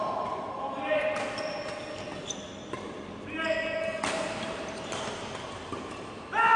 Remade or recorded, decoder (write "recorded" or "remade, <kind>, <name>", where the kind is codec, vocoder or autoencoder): recorded